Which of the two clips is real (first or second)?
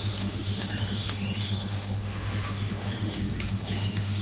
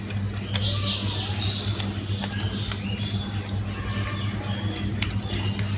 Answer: second